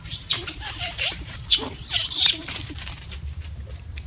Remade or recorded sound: remade